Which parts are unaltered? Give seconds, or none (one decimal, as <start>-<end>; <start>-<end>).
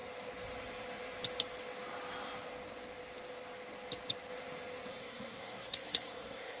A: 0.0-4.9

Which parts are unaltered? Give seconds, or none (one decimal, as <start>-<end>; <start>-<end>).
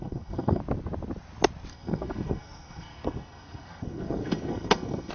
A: 0.6-1.7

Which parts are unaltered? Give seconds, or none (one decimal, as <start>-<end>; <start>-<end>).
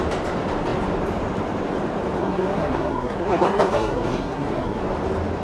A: 0.0-2.2; 4.8-5.4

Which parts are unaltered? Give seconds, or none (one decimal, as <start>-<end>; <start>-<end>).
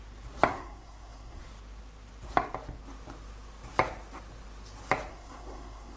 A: 0.0-0.5; 1.4-5.1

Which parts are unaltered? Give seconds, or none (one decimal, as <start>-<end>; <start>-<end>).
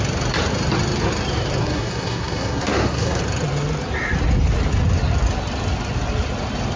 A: 0.0-1.6; 3.2-6.8